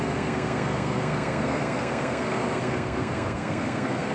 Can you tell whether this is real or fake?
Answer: fake